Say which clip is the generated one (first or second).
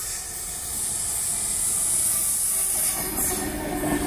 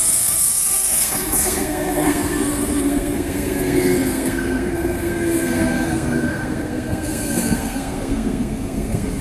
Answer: second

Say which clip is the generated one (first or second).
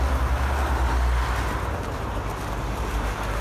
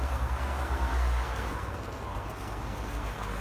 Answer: second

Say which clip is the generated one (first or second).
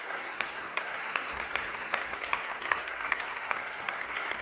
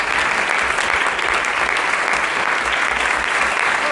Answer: first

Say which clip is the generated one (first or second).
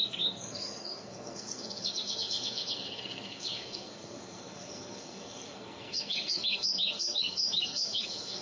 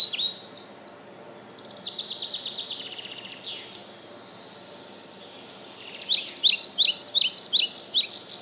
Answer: first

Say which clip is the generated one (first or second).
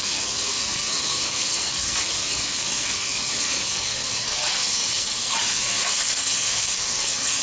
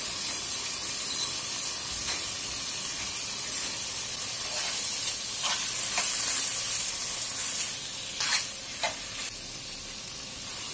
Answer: first